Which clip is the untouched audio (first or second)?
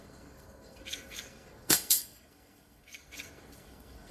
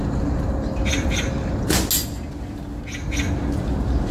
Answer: second